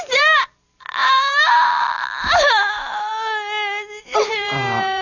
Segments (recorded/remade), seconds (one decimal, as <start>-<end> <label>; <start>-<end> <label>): 0.0-3.1 remade; 3.1-4.0 recorded; 4.0-5.0 remade